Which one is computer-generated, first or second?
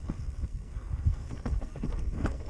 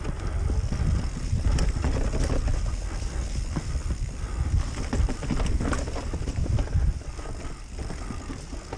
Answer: first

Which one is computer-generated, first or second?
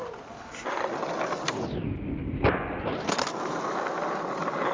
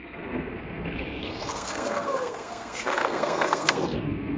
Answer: second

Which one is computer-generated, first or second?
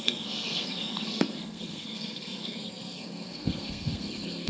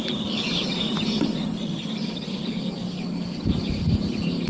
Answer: first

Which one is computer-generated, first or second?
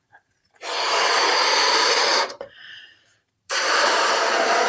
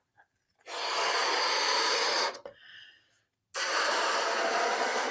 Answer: first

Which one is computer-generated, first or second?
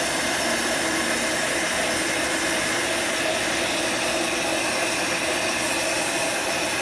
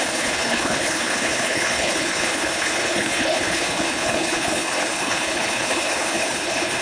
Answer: second